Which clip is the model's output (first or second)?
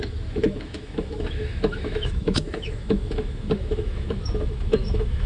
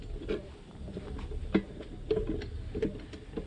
first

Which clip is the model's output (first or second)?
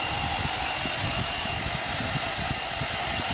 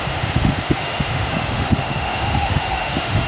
second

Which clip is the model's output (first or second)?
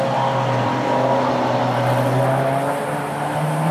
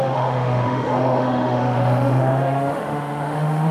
second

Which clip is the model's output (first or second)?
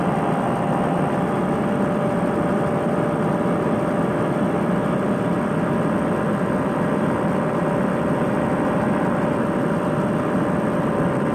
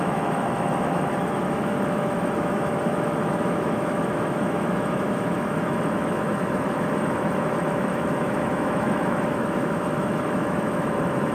second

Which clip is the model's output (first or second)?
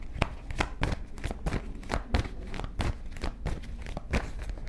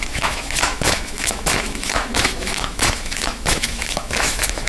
second